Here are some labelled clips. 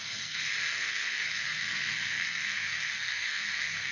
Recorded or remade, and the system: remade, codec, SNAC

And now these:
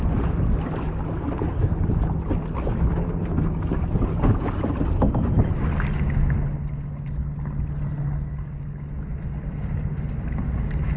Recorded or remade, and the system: recorded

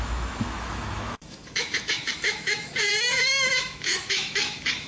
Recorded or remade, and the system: remade, autoencoder, DAC-VAE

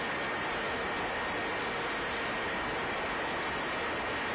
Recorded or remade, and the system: recorded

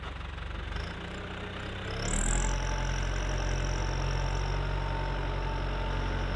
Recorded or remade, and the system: recorded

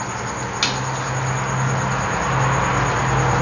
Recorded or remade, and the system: recorded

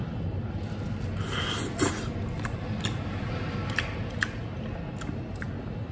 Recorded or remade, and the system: recorded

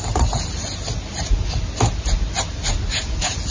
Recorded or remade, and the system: recorded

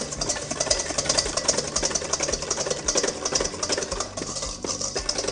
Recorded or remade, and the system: recorded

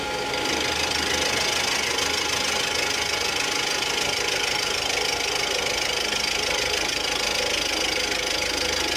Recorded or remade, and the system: recorded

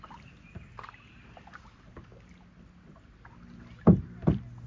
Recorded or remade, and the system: recorded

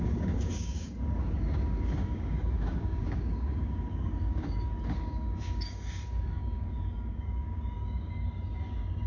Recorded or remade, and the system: remade, codec, DAC